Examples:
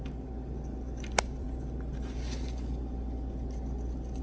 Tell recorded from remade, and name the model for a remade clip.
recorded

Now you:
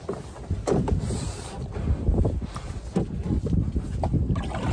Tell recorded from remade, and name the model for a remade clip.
recorded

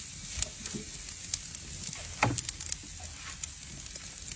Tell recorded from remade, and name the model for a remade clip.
recorded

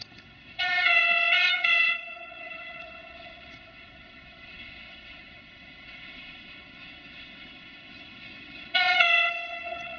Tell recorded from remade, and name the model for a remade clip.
remade, vocoder, WaveNeXt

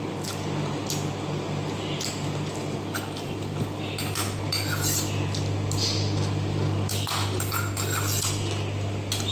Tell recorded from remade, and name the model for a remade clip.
recorded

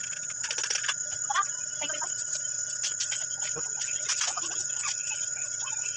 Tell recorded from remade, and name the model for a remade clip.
recorded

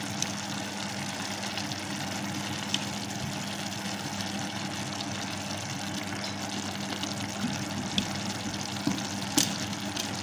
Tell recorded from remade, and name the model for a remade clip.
recorded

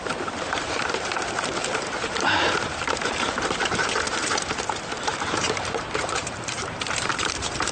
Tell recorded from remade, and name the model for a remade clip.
remade, vocoder, BigVGAN v2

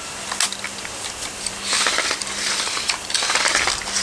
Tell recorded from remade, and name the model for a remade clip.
recorded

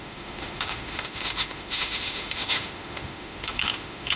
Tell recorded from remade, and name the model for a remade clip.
remade, autoencoder, DAC-VAE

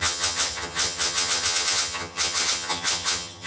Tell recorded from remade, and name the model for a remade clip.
remade, vocoder, HiFi-GAN